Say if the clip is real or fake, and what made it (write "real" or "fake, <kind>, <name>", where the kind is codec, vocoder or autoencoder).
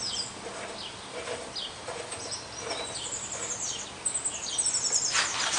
real